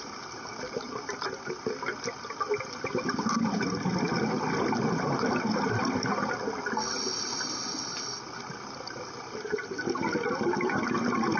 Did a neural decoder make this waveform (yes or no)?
no